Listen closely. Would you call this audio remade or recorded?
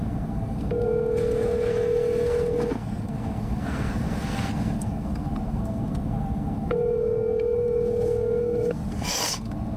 remade